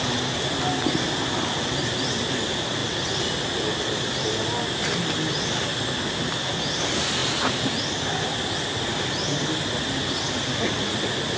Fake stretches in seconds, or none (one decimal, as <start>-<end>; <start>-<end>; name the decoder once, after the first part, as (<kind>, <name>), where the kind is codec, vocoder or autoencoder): none